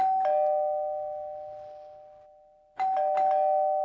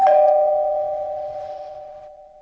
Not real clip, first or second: second